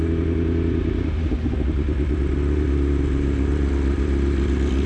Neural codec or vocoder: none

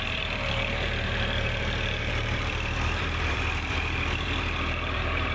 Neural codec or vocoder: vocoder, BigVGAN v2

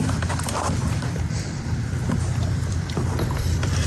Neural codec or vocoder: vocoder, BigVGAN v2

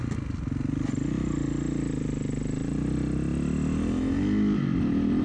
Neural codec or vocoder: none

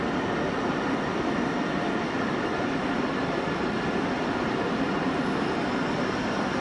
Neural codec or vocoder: vocoder, BigVGAN v2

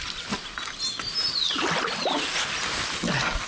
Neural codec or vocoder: none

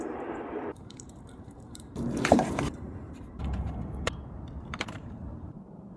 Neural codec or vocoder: vocoder, BigVGAN v2